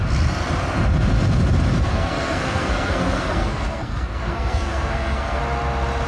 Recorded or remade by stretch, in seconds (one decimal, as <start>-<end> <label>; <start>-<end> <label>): 0.0-1.7 recorded; 1.7-5.4 remade; 5.4-6.1 recorded